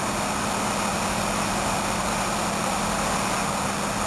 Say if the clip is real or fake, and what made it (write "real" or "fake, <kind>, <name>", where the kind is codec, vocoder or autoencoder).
real